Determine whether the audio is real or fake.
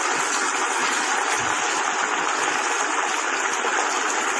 real